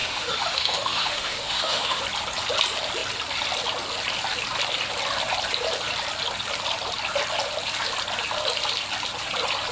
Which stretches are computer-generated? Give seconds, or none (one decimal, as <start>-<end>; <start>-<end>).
0.0-2.0